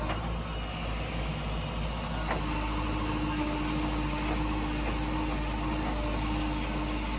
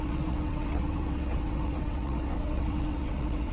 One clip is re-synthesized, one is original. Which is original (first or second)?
first